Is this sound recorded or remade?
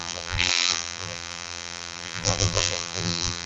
remade